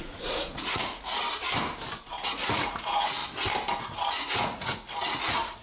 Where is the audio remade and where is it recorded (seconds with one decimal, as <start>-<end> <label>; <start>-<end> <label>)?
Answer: 0.0-1.1 remade; 1.1-1.9 recorded; 1.9-3.2 remade; 3.2-3.8 recorded; 3.8-5.6 remade